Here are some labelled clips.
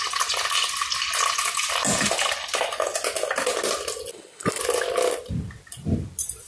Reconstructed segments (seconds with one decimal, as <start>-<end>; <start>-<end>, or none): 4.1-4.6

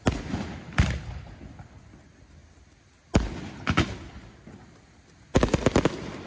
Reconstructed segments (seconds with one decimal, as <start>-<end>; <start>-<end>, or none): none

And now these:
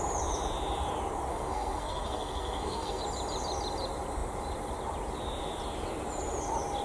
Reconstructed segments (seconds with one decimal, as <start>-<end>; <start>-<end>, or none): 1.3-3.0

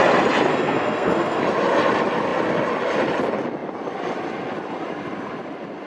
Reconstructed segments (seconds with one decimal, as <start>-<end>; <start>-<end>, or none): 0.5-1.4

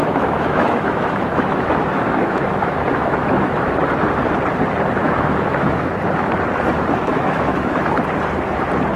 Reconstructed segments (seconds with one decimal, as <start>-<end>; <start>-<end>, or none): 0.0-3.7; 5.0-5.9; 7.1-7.8

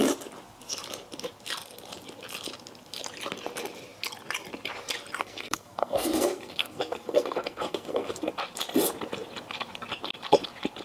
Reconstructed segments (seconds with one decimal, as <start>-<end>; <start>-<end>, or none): 5.2-8.3

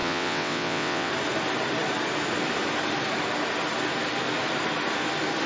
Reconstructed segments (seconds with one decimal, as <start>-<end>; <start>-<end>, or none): 0.0-1.1

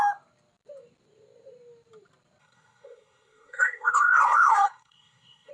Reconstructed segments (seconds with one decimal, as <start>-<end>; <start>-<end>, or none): 2.4-5.5